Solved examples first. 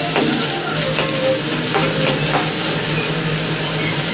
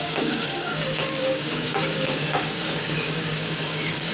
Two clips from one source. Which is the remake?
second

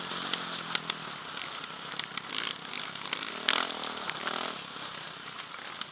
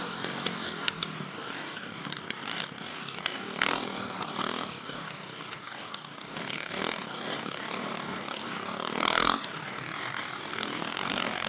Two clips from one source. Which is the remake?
second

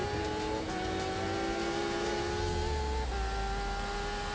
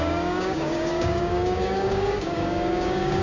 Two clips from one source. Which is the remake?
second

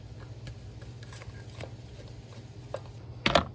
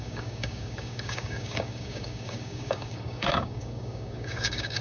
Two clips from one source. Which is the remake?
second